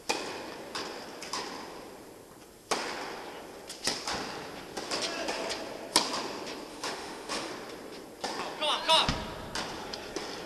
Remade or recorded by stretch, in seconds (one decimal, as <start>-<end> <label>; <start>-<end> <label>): 0.0-6.7 recorded; 6.7-7.5 remade; 7.5-10.5 recorded